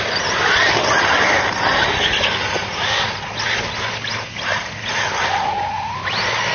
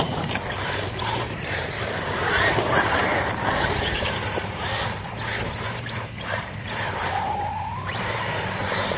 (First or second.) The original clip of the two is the first